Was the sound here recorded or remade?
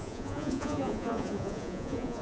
remade